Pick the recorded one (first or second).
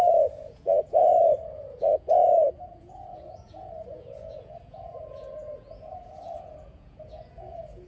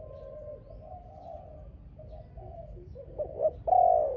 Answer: second